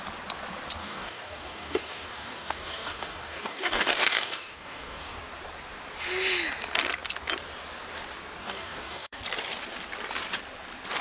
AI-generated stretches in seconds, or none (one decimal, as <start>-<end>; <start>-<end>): 0.8-5.2; 8.4-9.2